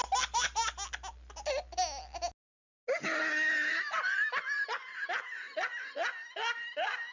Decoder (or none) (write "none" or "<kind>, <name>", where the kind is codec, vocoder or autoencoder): none